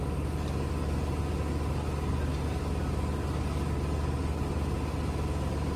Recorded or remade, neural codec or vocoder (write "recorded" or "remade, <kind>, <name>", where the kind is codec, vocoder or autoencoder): recorded